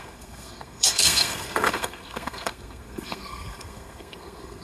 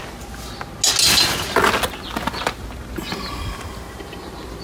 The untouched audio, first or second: second